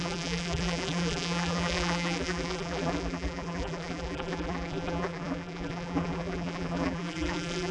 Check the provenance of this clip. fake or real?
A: fake